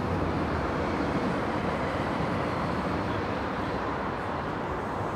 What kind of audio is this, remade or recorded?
remade